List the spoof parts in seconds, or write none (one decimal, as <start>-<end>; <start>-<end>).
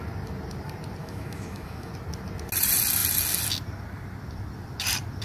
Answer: 1.0-1.9